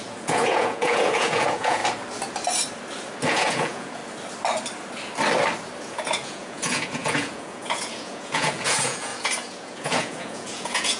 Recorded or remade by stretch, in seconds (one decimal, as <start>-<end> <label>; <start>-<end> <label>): 0.0-1.8 remade; 1.8-3.3 recorded; 3.3-4.0 remade; 4.0-5.8 recorded; 5.8-11.0 remade